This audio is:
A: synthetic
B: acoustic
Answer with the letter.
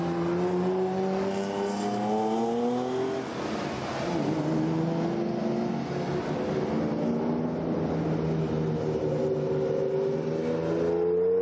B